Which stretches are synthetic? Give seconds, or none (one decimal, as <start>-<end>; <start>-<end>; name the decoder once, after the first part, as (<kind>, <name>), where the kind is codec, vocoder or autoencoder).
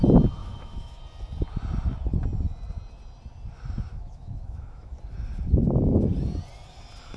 0.4-1.0 (autoencoder, DAC-VAE); 3.9-5.0